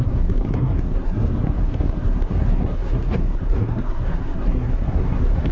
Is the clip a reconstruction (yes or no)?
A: yes